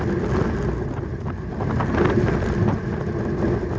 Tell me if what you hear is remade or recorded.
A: recorded